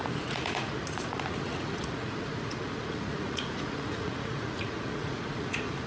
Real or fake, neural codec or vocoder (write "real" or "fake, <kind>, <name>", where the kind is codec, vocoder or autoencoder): fake, vocoder, Vocos